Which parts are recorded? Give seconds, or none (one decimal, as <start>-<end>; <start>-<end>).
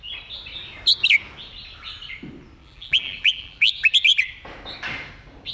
0.0-2.6; 3.6-5.5